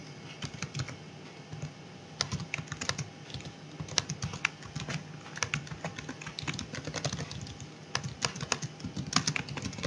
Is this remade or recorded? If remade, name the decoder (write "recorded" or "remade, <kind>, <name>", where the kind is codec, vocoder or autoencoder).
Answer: recorded